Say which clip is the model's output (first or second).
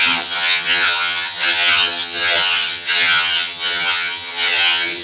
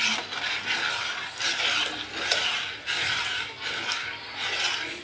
first